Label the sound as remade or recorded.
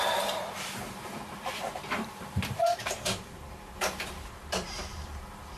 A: remade